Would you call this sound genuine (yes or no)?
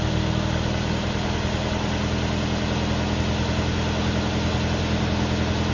yes